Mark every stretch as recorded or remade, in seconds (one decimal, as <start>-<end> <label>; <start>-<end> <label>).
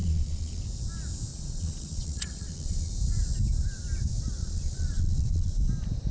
0.0-0.6 remade; 0.6-1.3 recorded; 1.3-2.9 remade; 2.9-4.4 recorded; 4.4-5.5 remade; 5.5-6.1 recorded